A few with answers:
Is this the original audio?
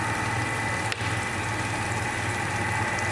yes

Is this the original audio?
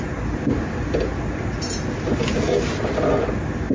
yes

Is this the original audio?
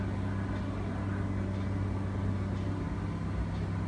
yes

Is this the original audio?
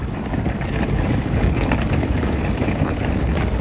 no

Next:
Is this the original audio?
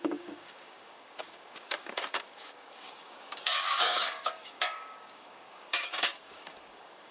no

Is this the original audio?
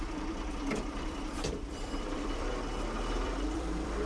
no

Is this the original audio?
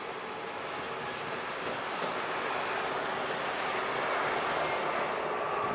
yes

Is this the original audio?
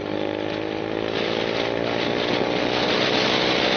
yes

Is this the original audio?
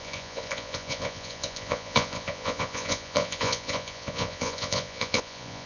no